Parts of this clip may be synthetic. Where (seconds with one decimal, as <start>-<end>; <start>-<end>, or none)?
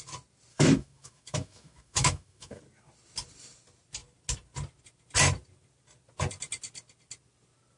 0.5-2.6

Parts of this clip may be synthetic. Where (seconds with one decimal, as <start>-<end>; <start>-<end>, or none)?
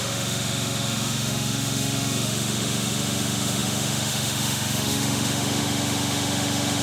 0.0-6.8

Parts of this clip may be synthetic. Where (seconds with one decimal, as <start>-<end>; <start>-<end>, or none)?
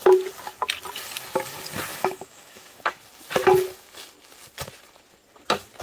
1.9-2.8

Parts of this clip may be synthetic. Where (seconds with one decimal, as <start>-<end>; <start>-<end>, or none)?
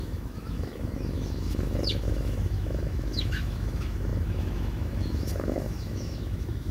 0.0-6.7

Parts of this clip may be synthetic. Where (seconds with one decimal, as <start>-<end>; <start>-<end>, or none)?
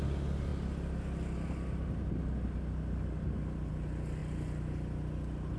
none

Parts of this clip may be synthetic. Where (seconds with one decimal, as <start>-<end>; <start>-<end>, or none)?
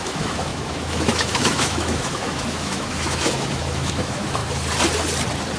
0.0-4.4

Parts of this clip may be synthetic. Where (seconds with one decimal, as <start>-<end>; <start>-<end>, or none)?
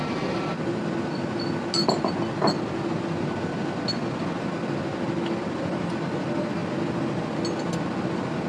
none